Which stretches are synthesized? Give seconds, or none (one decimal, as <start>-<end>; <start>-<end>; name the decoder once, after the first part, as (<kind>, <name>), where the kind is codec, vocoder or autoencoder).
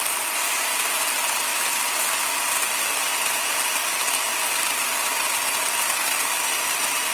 0.0-1.5 (vocoder, BigVGAN v2); 2.1-3.1